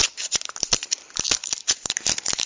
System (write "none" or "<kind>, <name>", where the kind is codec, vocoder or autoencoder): vocoder, BigVGAN v2